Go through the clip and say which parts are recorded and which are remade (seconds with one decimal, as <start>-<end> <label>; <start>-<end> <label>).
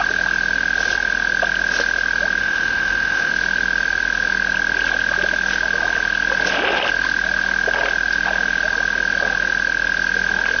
0.0-2.4 recorded; 2.4-3.3 remade; 3.3-10.6 recorded